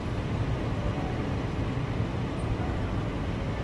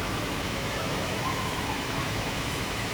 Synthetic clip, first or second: second